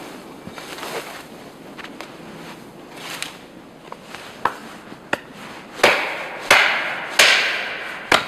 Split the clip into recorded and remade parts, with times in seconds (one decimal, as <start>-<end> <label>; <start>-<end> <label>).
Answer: 0.0-8.3 recorded

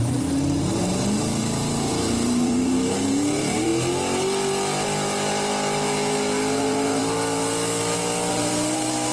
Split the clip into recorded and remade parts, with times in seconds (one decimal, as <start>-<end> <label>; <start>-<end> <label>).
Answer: 0.0-0.7 remade; 0.7-1.4 recorded; 1.4-3.7 remade; 3.7-6.6 recorded; 6.6-7.0 remade; 7.0-8.3 recorded; 8.3-9.1 remade

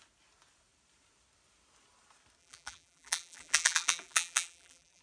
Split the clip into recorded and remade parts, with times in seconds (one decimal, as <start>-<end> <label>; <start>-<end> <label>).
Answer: 0.0-2.4 recorded; 2.4-5.0 remade

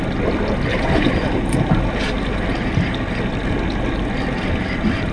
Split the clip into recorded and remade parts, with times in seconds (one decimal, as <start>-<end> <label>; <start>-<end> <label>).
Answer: 0.0-0.7 recorded; 0.7-1.8 remade; 1.8-5.1 recorded

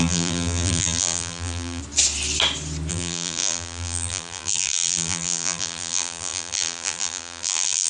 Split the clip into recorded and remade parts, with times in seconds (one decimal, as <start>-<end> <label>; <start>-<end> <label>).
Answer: 0.0-1.8 remade; 1.8-2.9 recorded; 2.9-7.9 remade